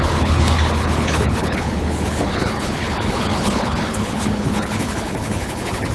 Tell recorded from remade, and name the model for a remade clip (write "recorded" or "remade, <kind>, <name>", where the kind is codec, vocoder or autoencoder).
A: remade, codec, HILCodec